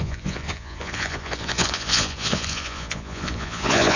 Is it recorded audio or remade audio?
remade